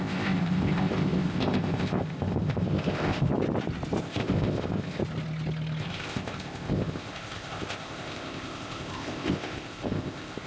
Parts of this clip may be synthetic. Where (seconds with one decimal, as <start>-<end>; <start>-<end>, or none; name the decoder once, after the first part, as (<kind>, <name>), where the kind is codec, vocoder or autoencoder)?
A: 0.0-3.3 (codec, ZipCodec); 4.0-5.0; 5.8-10.5